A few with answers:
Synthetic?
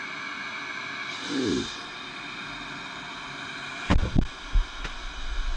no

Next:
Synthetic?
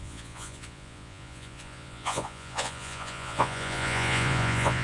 yes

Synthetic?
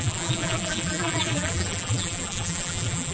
yes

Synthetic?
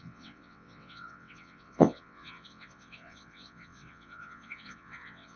yes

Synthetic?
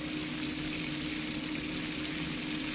no